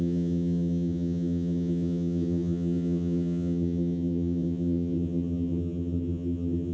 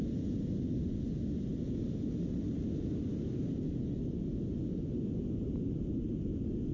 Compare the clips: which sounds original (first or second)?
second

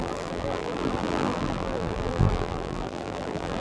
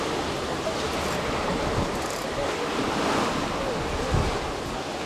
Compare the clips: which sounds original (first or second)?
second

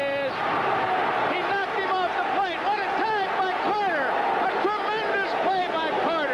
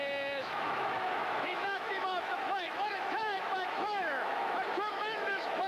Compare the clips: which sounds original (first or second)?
first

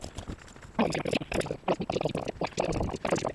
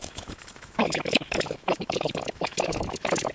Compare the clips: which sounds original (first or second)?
first